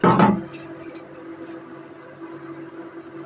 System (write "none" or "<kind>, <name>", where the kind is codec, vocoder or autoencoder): none